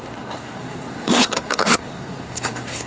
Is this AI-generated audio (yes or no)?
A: yes